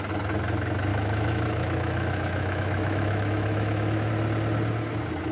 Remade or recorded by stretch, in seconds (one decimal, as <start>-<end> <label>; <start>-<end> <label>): 0.0-0.9 recorded; 0.9-4.1 remade; 4.1-5.3 recorded